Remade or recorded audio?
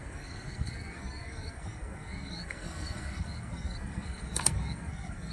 remade